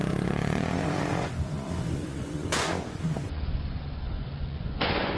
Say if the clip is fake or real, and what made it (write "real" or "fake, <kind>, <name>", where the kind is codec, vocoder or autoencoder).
fake, vocoder, Vocos